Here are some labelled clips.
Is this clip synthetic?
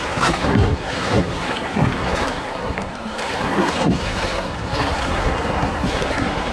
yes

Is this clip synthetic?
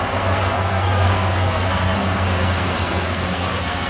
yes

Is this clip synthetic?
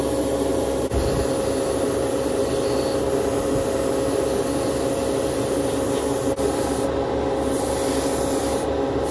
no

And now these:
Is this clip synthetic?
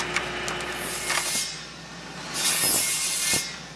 no